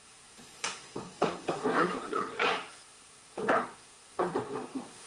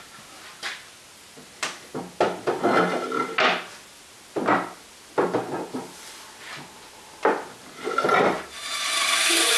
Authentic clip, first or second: second